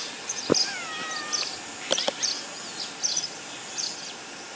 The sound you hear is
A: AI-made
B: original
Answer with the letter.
B